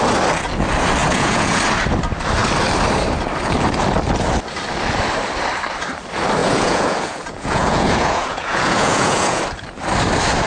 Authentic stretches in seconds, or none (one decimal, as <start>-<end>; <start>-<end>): 0.0-1.0; 1.6-6.4; 9.4-10.5